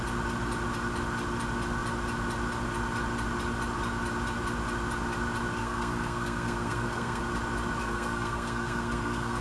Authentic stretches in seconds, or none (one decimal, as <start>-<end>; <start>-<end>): 0.0-5.6; 7.2-7.8